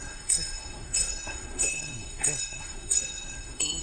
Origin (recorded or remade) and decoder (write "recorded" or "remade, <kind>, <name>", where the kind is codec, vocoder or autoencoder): remade, codec, SNAC